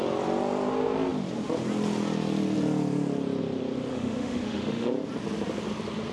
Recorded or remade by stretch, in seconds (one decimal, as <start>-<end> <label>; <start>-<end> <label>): 0.0-3.9 recorded; 3.9-4.9 remade; 4.9-6.1 recorded